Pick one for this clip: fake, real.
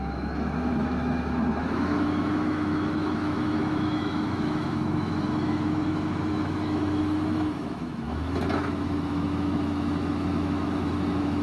fake